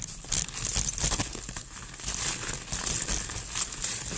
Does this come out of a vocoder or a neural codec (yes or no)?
no